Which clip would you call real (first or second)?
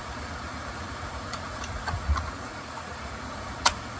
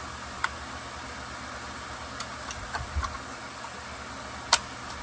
second